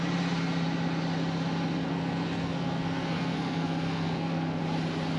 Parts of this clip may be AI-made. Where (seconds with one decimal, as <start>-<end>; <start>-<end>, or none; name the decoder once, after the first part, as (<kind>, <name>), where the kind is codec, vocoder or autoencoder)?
1.9-4.6 (codec, SNAC)